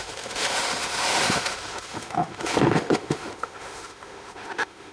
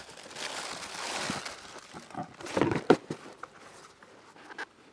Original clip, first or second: second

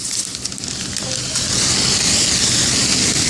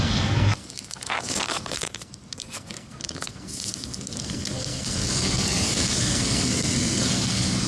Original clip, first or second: first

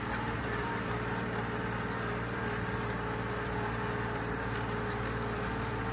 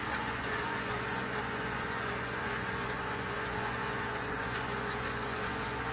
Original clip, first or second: first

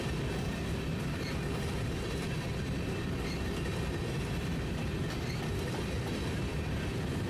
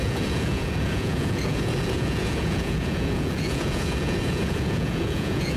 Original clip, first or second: first